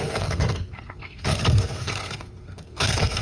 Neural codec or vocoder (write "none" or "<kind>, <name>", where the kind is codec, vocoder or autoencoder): codec, SNAC